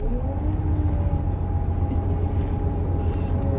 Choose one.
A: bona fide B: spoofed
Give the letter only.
A